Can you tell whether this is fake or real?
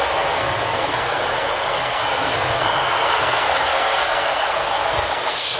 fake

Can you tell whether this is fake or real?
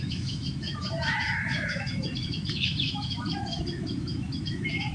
fake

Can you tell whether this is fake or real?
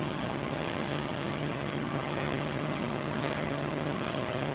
fake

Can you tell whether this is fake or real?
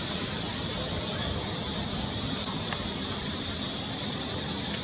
real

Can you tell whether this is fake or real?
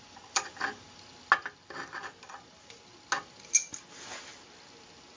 real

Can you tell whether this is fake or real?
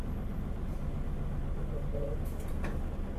real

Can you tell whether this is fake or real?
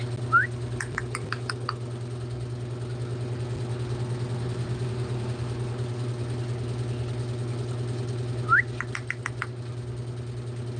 real